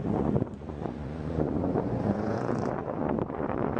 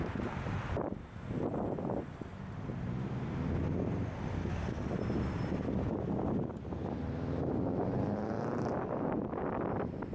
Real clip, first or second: second